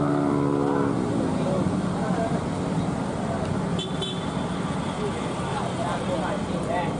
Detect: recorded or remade recorded